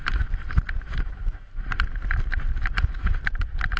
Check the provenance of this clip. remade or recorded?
recorded